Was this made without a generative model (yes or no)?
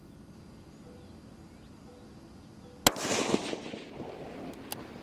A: yes